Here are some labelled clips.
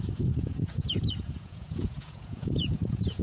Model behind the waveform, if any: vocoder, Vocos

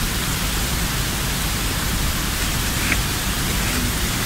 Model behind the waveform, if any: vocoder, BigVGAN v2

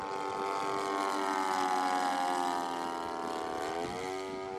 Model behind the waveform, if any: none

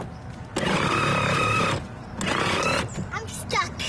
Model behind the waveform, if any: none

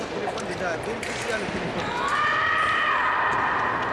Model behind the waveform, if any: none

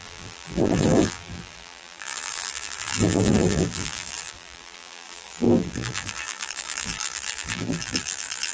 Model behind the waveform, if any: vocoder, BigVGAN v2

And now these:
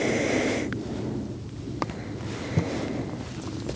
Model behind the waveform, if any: none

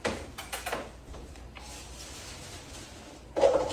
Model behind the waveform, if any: none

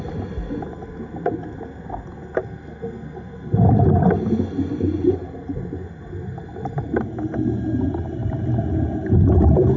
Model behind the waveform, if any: none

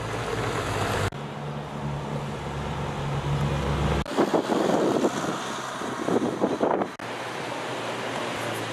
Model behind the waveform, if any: none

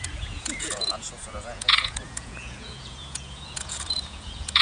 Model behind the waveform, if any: vocoder, Vocos